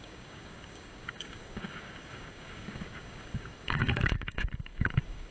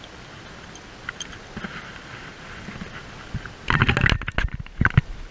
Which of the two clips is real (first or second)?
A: second